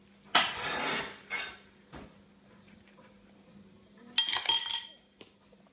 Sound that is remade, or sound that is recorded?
recorded